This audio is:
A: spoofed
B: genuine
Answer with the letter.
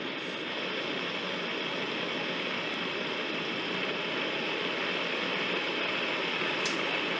A